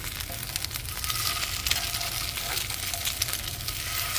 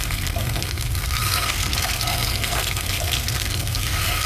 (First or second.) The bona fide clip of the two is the first